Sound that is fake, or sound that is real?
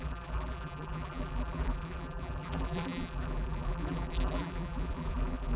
fake